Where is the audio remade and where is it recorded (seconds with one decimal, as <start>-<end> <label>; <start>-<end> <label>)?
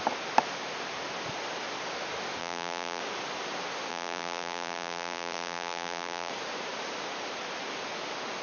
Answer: 0.0-2.4 recorded; 2.4-3.0 remade; 3.0-3.9 recorded; 3.9-6.3 remade; 6.3-8.4 recorded